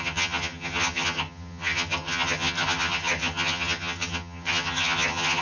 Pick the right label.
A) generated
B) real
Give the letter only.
A